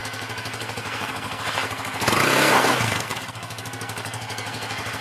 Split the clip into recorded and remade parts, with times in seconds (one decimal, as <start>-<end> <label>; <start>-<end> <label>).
0.0-5.0 remade